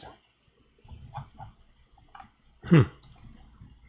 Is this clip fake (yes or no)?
no